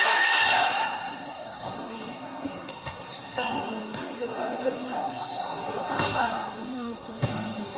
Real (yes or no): no